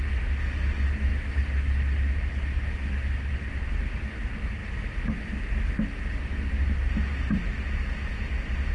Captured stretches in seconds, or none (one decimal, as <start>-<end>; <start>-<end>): 0.0-8.7